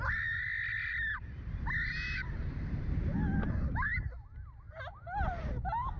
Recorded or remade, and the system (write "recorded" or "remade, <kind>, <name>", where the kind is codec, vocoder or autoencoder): recorded